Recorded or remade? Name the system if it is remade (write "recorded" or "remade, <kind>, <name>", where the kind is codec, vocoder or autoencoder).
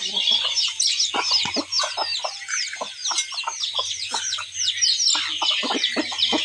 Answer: recorded